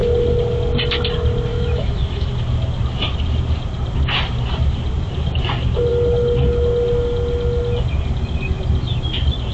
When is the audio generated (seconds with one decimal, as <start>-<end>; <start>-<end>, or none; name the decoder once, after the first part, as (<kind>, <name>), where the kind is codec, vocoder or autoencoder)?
1.5-2.3 (autoencoder, DAC-VAE)